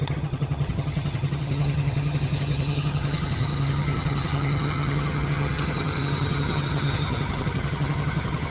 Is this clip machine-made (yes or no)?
yes